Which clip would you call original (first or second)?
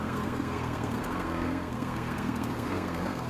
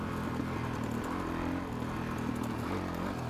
second